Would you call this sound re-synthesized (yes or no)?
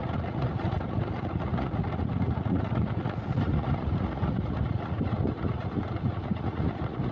yes